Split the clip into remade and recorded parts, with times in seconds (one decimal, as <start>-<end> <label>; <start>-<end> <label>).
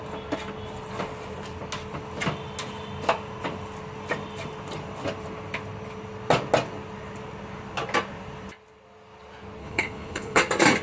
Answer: 0.0-9.6 recorded; 9.6-10.4 remade; 10.4-10.8 recorded